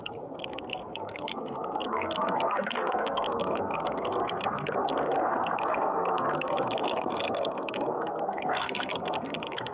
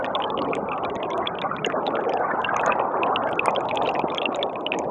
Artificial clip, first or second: first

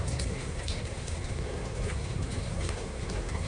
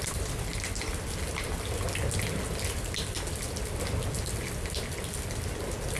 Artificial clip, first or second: first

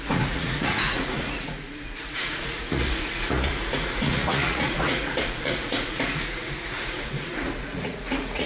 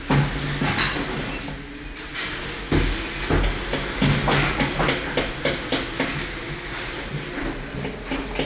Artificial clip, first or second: first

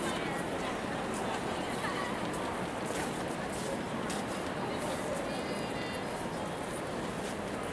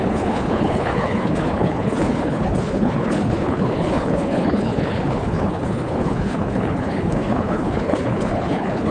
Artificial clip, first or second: second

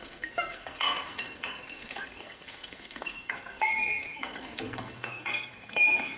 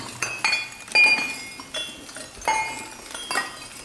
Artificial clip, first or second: first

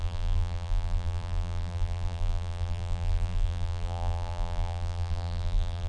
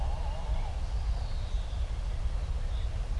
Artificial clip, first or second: first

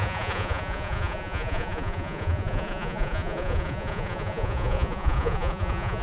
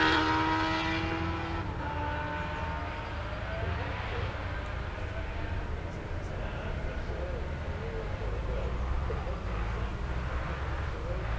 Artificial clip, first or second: first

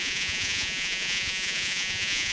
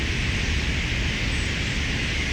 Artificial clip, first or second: first